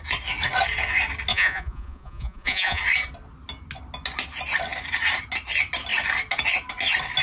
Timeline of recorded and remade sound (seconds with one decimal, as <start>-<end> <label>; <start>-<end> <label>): 0.0-1.3 recorded; 1.3-2.8 remade; 2.8-7.2 recorded